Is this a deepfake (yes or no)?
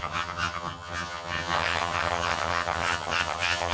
yes